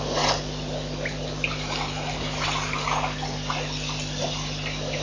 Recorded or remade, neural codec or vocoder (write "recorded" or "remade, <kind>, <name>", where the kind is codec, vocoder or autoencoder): recorded